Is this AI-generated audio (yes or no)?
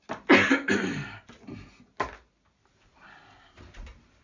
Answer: no